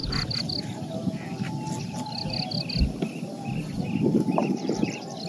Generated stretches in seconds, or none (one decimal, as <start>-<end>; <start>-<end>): none